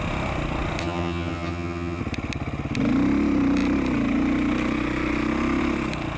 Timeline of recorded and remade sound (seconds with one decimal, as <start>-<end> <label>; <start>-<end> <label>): 0.0-0.8 recorded; 0.8-2.0 remade; 2.0-6.2 recorded